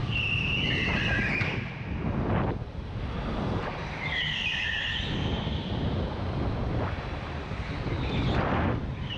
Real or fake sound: real